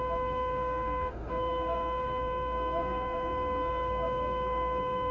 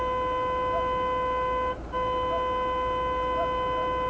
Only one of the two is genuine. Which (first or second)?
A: second